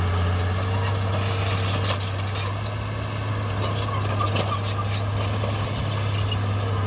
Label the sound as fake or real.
real